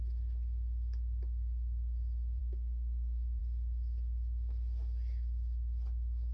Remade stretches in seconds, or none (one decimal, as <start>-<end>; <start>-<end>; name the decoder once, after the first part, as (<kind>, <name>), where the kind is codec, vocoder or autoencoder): 2.4-3.4 (codec, SNAC)